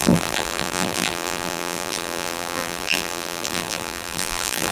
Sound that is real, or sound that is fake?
fake